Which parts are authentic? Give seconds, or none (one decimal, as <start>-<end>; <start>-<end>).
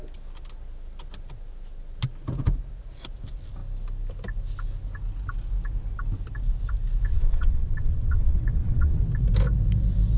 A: 0.0-7.1; 9.0-10.2